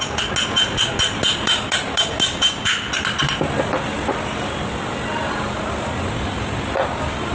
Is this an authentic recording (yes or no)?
yes